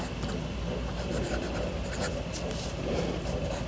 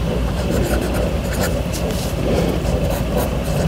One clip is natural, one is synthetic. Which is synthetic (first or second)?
second